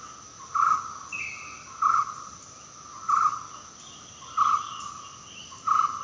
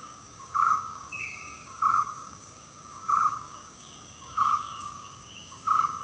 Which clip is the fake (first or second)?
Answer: second